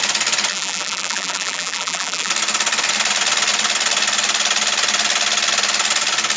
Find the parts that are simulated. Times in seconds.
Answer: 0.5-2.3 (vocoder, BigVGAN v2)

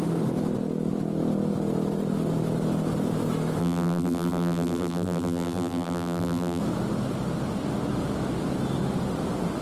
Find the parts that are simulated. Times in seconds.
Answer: 3.6-6.6 (vocoder, BigVGAN v2)